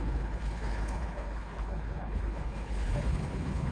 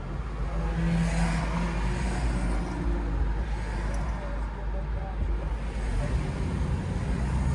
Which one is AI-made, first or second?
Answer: first